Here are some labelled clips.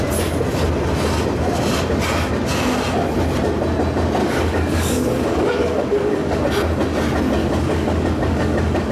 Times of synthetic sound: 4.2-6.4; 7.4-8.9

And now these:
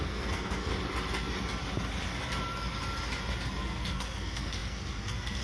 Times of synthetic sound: 0.0-0.7; 3.6-5.4

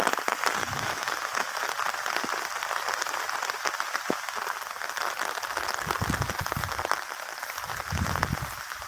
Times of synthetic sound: 0.6-1.7

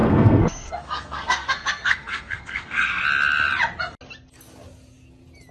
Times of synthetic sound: 0.0-3.0

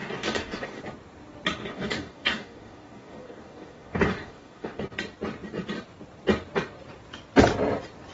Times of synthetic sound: 0.0-0.8; 1.6-4.8

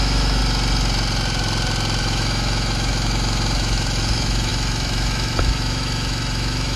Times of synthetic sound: 0.0-0.4; 2.0-6.8

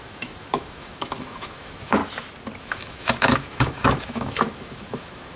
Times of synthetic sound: 0.0-2.0; 2.6-5.4

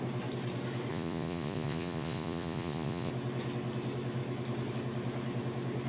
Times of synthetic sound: 0.9-3.1